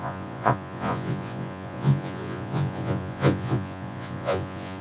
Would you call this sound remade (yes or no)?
yes